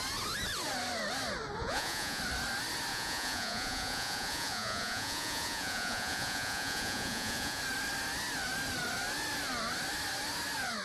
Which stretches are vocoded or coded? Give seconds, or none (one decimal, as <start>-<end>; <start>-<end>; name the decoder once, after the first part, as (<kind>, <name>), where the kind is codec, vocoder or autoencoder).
1.6-2.2 (vocoder, Vocos); 2.9-7.6